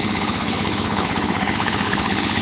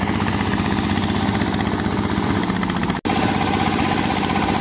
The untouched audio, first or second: second